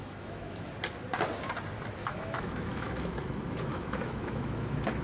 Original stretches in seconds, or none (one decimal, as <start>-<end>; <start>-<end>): 0.7-2.0